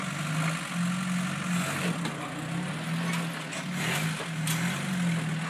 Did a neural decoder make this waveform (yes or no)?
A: no